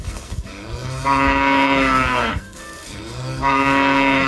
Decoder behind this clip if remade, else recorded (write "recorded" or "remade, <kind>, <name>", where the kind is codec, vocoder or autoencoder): remade, codec, SNAC